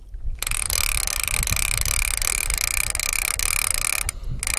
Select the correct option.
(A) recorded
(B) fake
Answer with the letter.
A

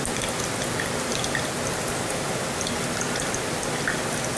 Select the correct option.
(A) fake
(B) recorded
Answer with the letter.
B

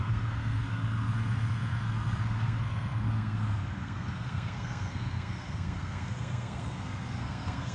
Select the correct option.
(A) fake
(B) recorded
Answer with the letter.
A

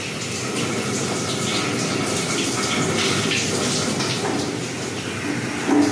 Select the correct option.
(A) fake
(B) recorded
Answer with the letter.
B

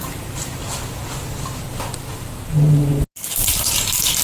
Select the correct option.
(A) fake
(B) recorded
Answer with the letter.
B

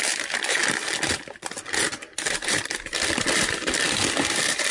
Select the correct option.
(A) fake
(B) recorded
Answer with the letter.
B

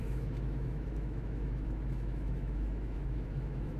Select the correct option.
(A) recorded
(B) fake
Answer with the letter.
B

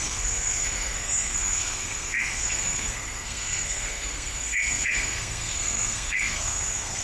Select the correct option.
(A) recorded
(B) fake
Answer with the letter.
B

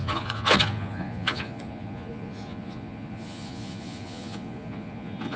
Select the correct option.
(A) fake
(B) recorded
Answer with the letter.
A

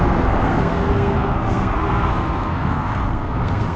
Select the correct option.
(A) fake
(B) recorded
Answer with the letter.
A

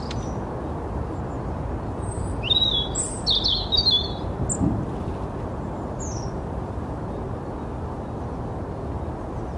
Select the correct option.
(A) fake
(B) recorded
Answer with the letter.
B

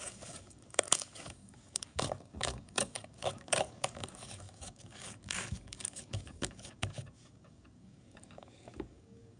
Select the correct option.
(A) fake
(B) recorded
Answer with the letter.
A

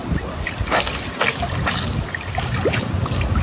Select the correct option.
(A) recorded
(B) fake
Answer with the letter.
A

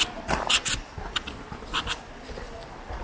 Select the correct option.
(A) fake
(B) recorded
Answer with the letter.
B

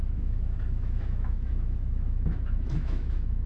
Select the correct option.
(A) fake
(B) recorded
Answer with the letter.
A